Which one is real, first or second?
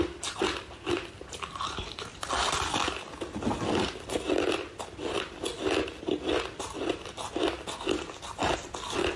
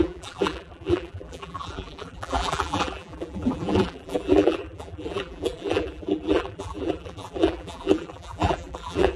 first